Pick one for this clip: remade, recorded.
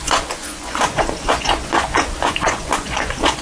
remade